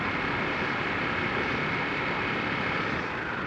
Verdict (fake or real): fake